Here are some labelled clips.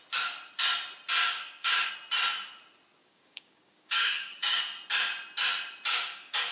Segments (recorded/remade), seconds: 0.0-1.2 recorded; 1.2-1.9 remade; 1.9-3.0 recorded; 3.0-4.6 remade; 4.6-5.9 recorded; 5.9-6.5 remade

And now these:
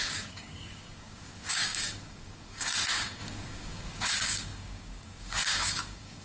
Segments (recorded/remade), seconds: 0.0-6.2 remade

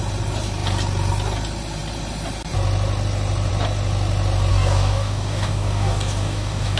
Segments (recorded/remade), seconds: 0.0-4.5 recorded; 4.5-6.8 remade

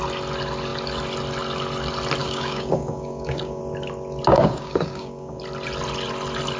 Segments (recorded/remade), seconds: 0.0-2.2 recorded; 2.2-3.6 remade; 3.6-4.3 recorded; 4.3-5.4 remade; 5.4-6.6 recorded

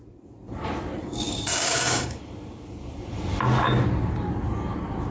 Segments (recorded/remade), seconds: 0.0-1.0 recorded; 1.0-2.2 remade; 2.2-5.1 recorded

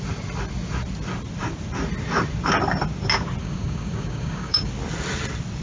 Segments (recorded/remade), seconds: 0.0-3.4 recorded; 3.4-4.7 remade; 4.7-5.6 recorded

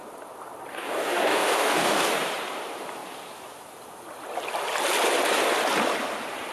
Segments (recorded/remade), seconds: 0.0-0.7 recorded; 0.7-2.1 remade; 2.1-6.5 recorded